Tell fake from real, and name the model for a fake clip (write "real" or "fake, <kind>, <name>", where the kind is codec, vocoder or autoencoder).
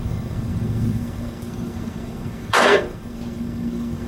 fake, codec, SNAC